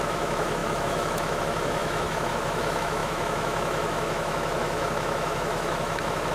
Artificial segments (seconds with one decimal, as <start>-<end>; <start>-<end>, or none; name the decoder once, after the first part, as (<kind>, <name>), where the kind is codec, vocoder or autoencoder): 0.0-6.3 (autoencoder, DAC-VAE)